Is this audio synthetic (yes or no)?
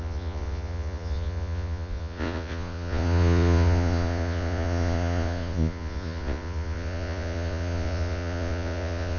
yes